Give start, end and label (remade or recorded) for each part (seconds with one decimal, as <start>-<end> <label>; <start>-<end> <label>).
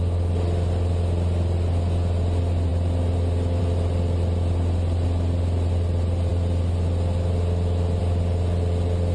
0.0-9.1 recorded